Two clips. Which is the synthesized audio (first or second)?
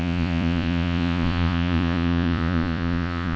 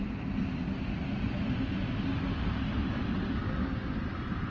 first